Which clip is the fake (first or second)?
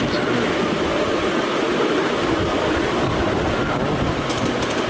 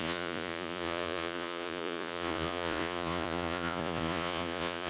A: second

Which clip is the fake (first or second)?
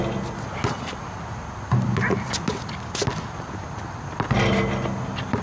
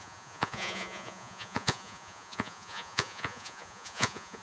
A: second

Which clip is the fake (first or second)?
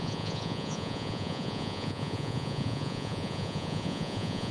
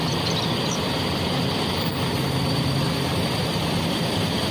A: first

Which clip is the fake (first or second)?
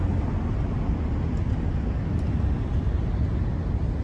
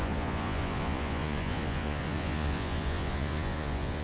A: second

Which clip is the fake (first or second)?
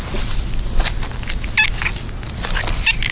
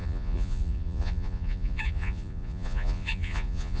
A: second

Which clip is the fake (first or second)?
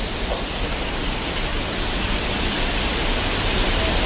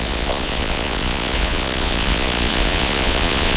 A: second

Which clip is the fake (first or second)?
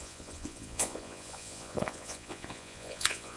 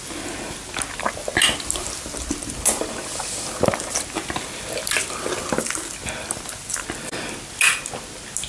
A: first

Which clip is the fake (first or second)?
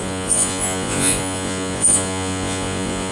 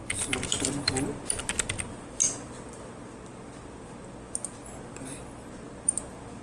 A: first